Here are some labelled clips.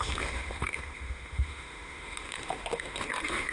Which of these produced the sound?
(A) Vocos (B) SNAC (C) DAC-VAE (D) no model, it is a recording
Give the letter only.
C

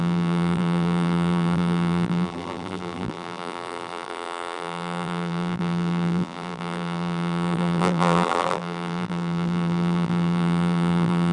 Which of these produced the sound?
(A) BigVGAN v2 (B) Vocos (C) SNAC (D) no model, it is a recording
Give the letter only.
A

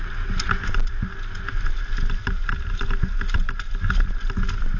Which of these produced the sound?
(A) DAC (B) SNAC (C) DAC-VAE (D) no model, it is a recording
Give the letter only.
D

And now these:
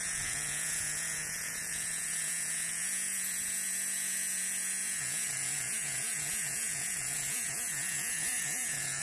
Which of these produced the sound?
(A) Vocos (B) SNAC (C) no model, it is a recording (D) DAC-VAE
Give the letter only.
A